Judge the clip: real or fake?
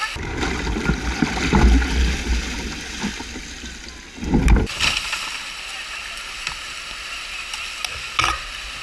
real